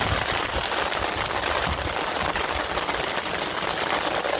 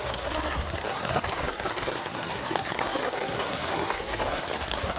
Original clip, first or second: first